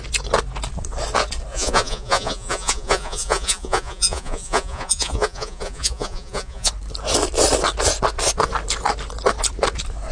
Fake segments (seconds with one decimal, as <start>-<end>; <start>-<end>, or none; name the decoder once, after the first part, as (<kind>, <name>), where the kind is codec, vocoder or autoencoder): 1.5-6.7 (vocoder, Vocos)